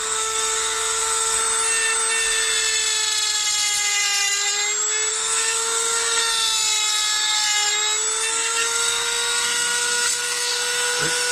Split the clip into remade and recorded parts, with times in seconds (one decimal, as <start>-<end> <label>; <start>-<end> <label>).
0.0-1.4 remade; 1.4-5.1 recorded; 5.1-6.2 remade; 6.2-8.3 recorded; 8.3-11.3 remade